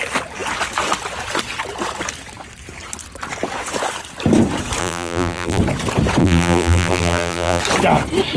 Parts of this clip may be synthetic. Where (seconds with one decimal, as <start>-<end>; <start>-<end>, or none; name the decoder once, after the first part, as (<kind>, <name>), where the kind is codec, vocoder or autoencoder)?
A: 4.8-5.6 (vocoder, BigVGAN v2); 6.2-7.6